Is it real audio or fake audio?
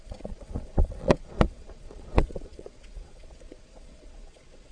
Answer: fake